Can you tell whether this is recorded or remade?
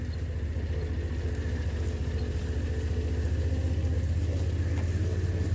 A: recorded